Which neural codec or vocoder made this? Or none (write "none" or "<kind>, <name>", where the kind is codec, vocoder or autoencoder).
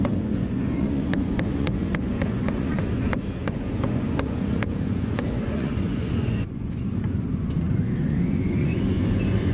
vocoder, Vocos